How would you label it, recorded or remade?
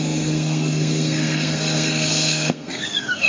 remade